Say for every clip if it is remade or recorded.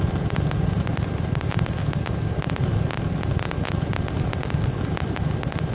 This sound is remade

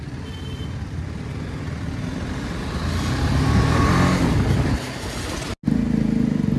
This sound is recorded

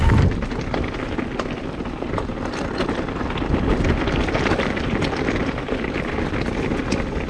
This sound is recorded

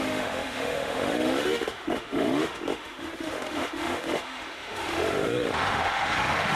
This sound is remade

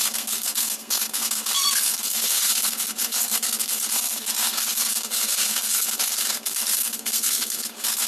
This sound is remade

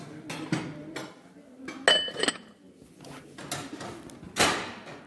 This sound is recorded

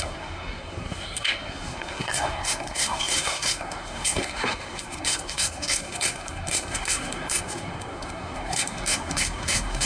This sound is remade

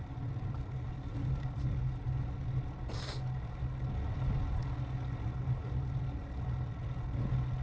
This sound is recorded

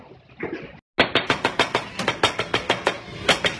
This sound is recorded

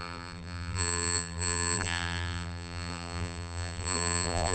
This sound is remade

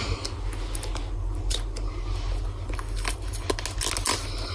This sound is recorded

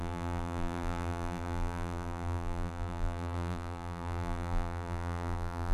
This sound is remade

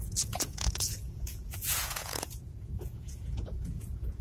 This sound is remade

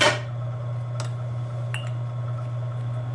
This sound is recorded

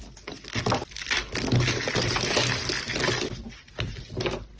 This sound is recorded